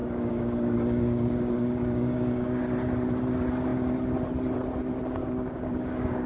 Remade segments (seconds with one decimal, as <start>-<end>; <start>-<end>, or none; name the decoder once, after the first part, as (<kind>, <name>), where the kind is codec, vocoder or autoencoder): 0.0-2.6 (codec, DAC); 5.2-6.3